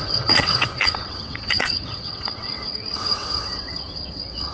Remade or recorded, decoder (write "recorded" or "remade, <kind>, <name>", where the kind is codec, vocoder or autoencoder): remade, vocoder, WaveNeXt